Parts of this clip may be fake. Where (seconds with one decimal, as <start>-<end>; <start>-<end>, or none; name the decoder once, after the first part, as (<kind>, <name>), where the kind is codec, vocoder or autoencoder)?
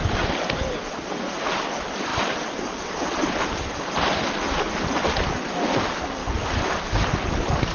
0.0-2.1 (vocoder, BigVGAN v2); 4.7-7.7